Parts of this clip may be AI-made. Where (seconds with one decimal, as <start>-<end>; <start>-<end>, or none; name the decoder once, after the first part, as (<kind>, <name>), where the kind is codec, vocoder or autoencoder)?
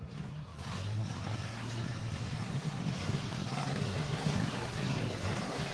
0.0-5.7 (codec, SNAC)